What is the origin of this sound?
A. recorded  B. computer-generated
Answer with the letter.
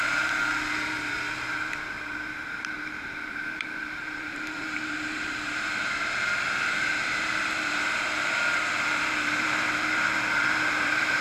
B